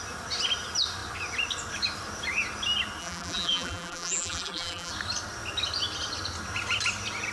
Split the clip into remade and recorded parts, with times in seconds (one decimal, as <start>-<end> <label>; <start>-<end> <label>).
0.0-3.0 recorded; 3.0-4.9 remade; 4.9-7.3 recorded